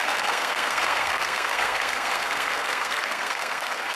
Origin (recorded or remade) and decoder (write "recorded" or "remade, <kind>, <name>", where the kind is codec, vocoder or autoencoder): remade, codec, SNAC